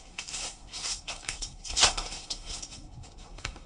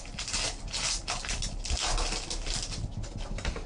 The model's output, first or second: first